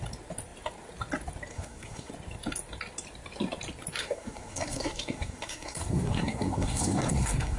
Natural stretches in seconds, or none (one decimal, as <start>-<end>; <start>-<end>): 0.0-1.5; 2.1-4.0